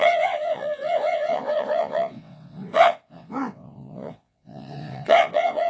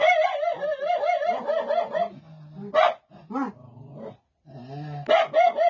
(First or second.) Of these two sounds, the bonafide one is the second